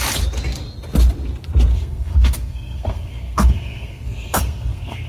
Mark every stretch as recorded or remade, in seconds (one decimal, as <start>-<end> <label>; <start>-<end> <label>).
0.0-1.7 recorded; 1.7-5.1 remade